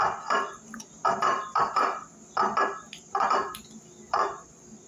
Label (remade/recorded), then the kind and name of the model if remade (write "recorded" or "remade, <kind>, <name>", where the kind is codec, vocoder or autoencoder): remade, vocoder, BigVGAN v2